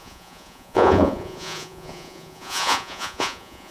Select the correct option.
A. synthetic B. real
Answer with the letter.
A